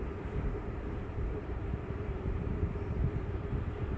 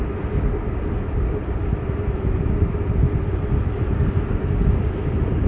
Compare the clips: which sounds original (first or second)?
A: second